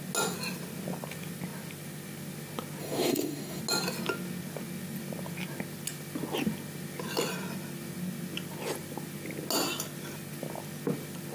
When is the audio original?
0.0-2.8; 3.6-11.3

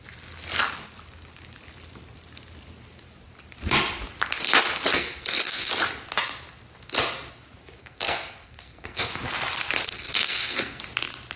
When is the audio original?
0.0-4.9; 5.7-7.8; 9.1-9.9; 10.8-11.4

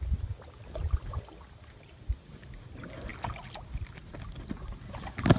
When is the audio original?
0.0-5.4

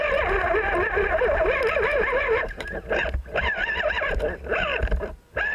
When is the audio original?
0.0-1.9; 2.9-5.5

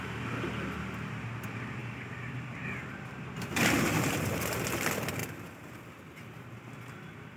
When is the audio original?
0.0-1.8; 3.4-7.4

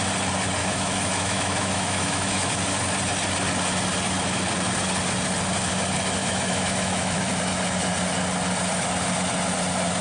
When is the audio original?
0.0-0.6; 2.5-6.2; 7.4-10.0

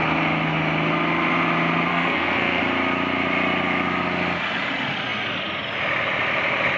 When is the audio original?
0.0-1.9; 2.6-6.8

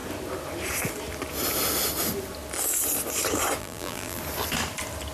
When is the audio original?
0.0-3.6; 4.2-5.1